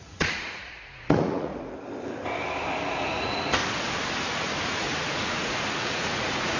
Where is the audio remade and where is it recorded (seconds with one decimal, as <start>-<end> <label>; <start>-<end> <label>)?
0.0-1.5 remade; 1.5-3.0 recorded; 3.0-3.6 remade; 3.6-4.5 recorded; 4.5-6.6 remade